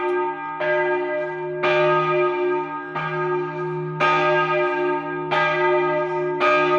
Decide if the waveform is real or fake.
real